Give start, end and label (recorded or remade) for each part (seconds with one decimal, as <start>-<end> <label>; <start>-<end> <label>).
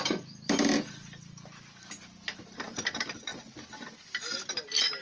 0.0-3.3 remade; 3.3-4.5 recorded; 4.5-5.0 remade